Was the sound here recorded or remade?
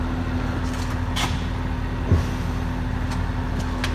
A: recorded